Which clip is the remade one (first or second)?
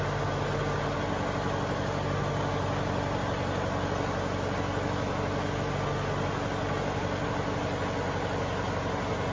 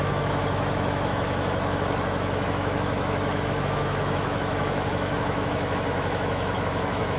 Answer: second